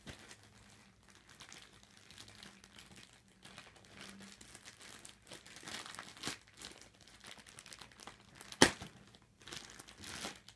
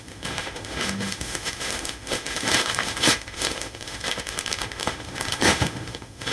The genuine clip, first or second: first